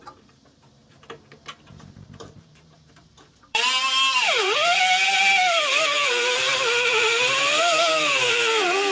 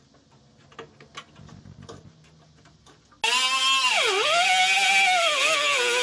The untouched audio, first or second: second